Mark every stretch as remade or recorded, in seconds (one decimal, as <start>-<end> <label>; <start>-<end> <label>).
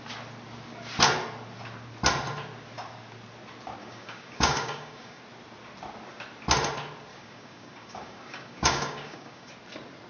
0.0-3.8 recorded; 3.8-5.2 remade; 5.2-7.1 recorded; 7.1-9.5 remade; 9.5-10.1 recorded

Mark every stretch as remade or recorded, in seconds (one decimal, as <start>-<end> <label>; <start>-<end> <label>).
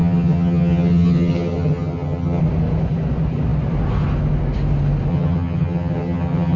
0.0-2.4 remade; 2.4-5.1 recorded; 5.1-6.6 remade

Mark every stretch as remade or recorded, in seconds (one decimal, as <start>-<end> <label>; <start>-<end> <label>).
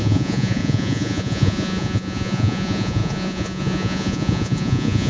0.0-5.1 remade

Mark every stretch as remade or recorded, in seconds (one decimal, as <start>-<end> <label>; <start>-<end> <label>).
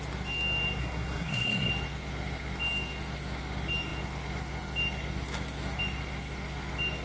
0.0-0.8 recorded; 0.8-1.7 remade; 1.7-7.0 recorded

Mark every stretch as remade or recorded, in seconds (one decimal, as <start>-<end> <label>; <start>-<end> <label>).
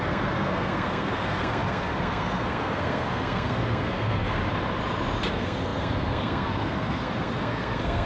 0.0-4.4 remade; 4.4-5.3 recorded; 5.3-8.1 remade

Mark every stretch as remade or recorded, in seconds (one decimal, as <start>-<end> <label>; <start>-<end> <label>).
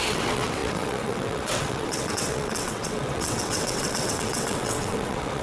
0.0-5.4 remade